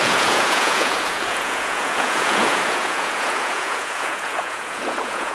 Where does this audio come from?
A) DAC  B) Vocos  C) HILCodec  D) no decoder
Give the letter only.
B